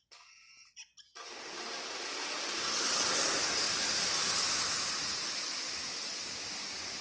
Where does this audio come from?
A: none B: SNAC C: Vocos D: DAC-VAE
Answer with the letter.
A